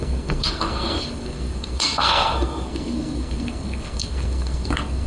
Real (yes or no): no